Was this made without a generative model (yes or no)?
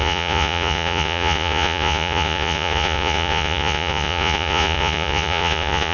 no